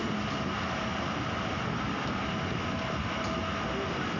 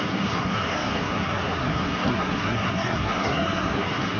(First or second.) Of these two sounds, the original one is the first